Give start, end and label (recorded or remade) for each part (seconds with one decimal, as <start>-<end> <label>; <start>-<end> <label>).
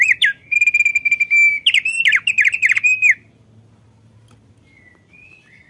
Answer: 0.0-5.7 recorded